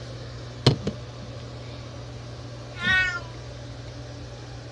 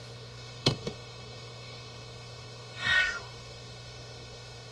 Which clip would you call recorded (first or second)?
first